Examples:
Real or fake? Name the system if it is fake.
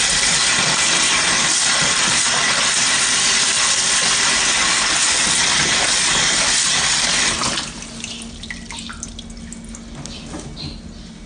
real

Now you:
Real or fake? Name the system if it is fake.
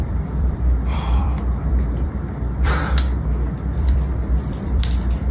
fake, vocoder, BigVGAN v2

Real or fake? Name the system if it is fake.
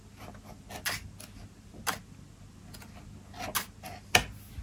real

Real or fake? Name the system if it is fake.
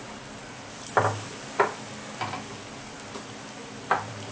real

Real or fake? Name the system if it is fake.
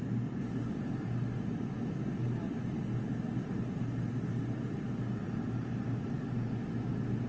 real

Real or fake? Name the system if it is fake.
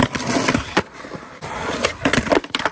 fake, vocoder, BigVGAN v2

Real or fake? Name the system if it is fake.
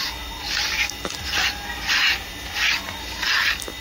real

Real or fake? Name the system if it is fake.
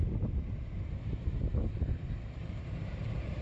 fake, vocoder, BigVGAN v2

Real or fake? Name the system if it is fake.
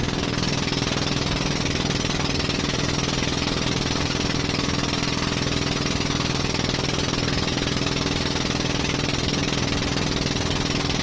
real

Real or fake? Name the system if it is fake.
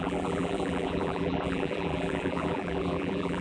fake, vocoder, BigVGAN v2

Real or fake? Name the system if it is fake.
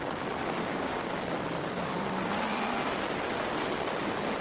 real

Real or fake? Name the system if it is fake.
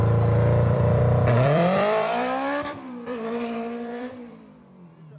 fake, vocoder, BigVGAN v2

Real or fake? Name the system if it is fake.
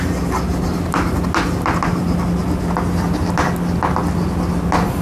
real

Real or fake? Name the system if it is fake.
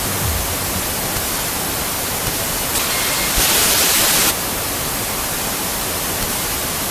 real